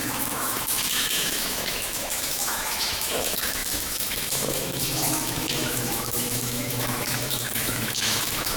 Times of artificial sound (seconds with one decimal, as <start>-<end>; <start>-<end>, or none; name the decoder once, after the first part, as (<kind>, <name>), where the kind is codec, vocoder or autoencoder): 0.0-8.6 (autoencoder, DAC-VAE)